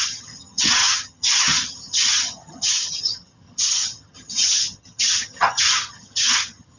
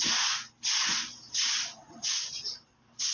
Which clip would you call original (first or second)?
second